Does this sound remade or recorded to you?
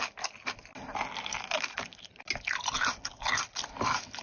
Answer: recorded